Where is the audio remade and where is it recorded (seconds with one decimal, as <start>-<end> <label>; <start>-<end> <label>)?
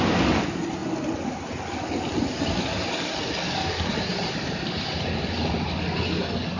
0.0-6.6 recorded